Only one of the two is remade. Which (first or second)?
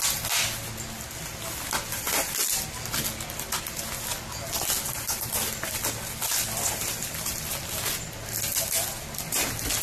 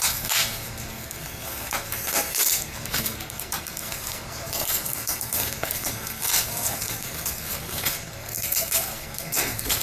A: second